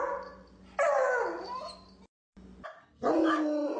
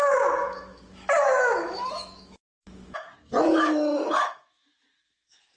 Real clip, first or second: first